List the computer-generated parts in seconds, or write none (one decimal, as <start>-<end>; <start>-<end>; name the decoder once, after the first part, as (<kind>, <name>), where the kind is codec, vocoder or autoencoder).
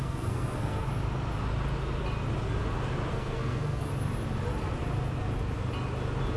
0.0-0.9 (codec, SNAC); 3.1-3.9